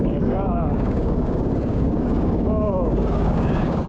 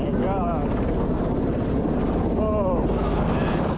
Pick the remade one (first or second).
first